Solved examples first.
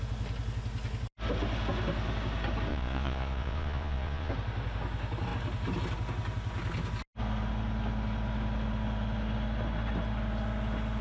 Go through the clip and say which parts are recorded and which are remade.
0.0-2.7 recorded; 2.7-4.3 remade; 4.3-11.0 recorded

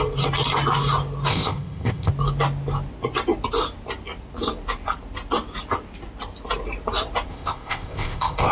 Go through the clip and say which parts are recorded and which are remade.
0.0-1.3 recorded; 1.3-2.1 remade; 2.1-7.3 recorded; 7.3-8.5 remade

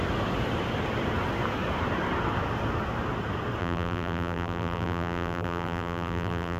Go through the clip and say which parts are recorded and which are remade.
0.0-3.6 recorded; 3.6-6.6 remade

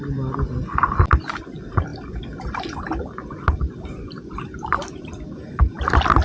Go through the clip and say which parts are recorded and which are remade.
0.0-6.2 recorded

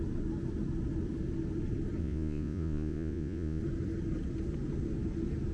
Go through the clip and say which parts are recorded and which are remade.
0.0-2.0 recorded; 2.0-3.6 remade; 3.6-5.5 recorded

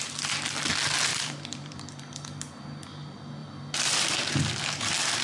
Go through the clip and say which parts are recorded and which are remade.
0.0-1.1 recorded; 1.1-2.0 remade; 2.0-3.4 recorded; 3.4-4.3 remade; 4.3-5.2 recorded

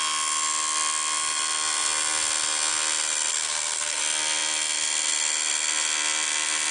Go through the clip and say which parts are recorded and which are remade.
0.0-3.3 recorded; 3.3-4.0 remade; 4.0-6.7 recorded

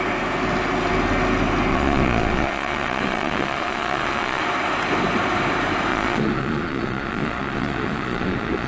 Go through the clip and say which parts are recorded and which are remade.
0.0-1.7 recorded; 1.7-4.4 remade; 4.4-5.9 recorded; 5.9-8.7 remade